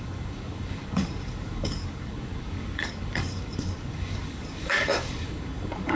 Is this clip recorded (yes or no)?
no